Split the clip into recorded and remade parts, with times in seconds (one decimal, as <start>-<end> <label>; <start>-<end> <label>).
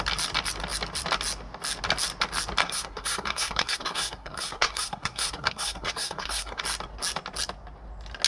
0.0-2.6 recorded; 2.6-6.6 remade; 6.6-8.3 recorded